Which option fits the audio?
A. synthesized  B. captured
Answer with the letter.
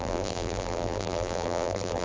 A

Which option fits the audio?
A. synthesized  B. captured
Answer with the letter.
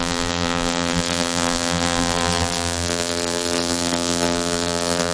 A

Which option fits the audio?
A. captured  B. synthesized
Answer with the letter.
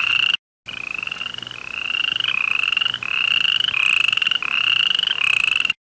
A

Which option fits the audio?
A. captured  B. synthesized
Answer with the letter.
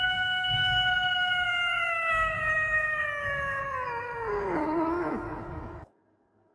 B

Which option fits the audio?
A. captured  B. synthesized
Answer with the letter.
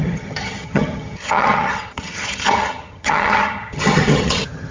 B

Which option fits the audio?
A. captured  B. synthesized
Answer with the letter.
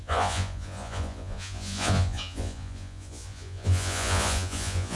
B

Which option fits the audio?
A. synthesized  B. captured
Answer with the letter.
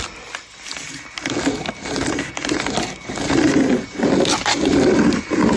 B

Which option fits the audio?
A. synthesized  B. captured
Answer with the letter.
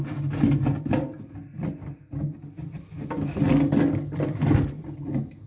B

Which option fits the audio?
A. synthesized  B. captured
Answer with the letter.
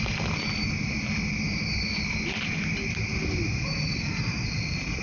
B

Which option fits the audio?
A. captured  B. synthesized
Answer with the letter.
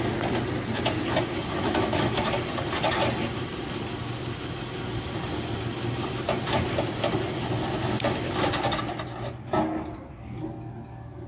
A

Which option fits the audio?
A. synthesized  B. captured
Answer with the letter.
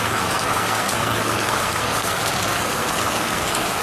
A